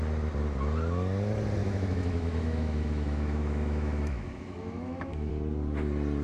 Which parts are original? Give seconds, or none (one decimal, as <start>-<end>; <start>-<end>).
0.0-1.6; 5.3-6.2